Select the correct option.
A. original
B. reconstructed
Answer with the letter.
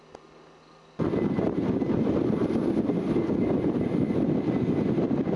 A